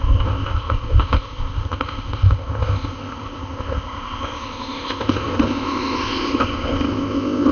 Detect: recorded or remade remade